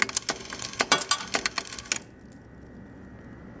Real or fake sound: real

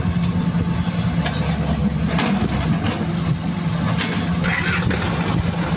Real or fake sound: real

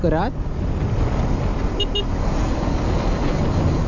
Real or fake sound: real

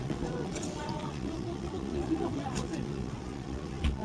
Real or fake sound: fake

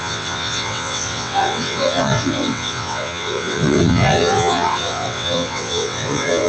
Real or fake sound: fake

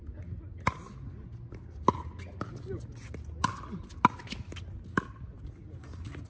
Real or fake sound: real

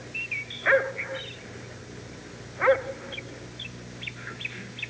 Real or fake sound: real